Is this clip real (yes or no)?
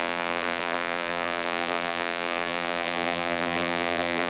no